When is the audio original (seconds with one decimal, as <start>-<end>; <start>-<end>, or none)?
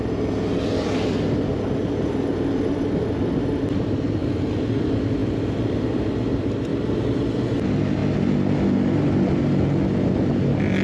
0.0-10.8